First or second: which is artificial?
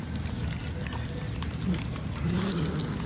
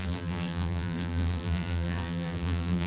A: second